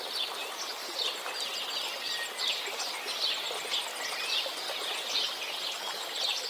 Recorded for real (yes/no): yes